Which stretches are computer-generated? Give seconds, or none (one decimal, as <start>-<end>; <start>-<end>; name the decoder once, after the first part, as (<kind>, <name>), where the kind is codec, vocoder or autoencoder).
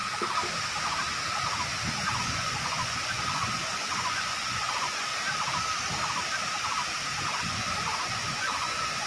2.2-5.1 (vocoder, Vocos); 7.4-9.1